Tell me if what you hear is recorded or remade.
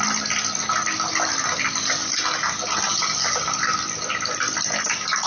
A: recorded